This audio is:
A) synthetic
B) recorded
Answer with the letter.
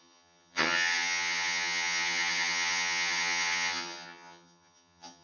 A